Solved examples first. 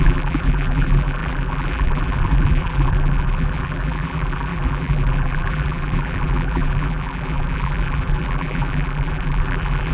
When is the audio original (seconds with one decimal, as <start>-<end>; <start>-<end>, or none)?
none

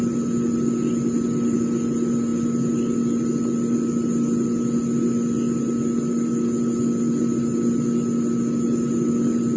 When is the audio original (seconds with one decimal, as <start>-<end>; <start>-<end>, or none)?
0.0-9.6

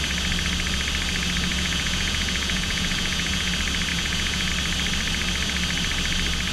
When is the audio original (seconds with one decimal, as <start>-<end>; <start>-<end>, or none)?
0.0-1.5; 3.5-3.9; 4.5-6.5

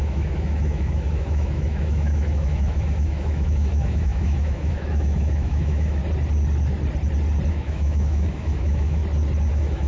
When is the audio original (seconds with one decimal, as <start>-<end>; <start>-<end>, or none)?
6.0-7.5; 9.0-9.5

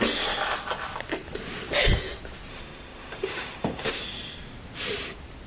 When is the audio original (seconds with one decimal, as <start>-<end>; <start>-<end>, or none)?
0.0-2.5; 4.0-5.5

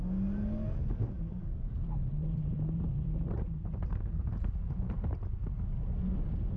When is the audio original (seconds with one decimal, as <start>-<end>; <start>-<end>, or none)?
0.0-1.7; 5.7-6.6

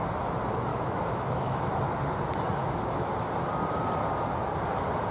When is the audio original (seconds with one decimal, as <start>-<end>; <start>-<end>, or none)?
0.0-0.7; 1.7-2.6; 3.1-5.1